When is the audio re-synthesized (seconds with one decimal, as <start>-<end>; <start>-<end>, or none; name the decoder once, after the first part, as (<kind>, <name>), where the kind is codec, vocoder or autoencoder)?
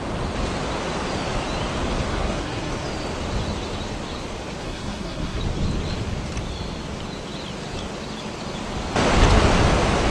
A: 2.1-2.7 (codec, SNAC); 4.6-5.4